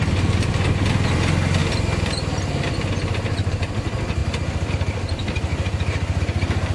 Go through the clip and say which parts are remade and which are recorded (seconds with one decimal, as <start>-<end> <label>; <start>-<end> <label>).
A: 0.0-6.7 recorded